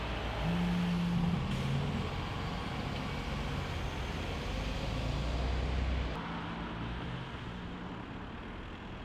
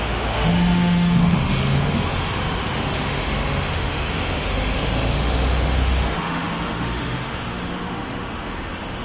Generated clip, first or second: second